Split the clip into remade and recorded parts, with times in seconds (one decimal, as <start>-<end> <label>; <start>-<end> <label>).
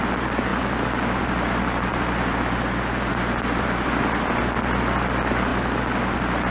0.0-0.5 recorded; 0.5-1.5 remade; 1.5-5.5 recorded; 5.5-6.5 remade